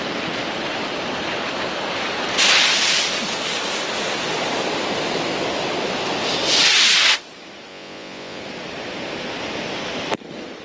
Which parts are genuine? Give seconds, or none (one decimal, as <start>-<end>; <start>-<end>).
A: 0.0-7.7; 8.4-10.6

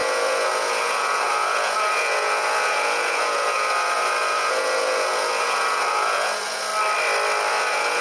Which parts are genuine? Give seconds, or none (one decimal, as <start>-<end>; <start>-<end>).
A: 6.7-7.5

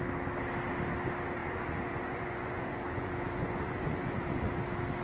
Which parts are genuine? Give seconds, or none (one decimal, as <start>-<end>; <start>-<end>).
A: 0.0-1.4; 4.4-5.0

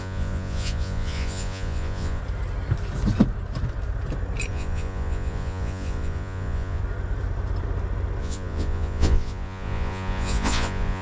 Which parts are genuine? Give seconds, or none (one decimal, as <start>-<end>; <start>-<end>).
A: 2.2-4.5; 6.8-8.2

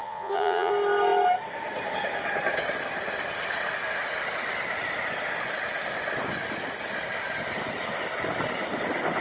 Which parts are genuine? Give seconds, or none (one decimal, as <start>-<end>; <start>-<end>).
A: 0.7-9.2

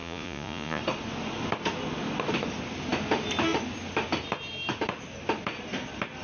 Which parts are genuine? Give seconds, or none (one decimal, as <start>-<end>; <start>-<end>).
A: 0.8-6.2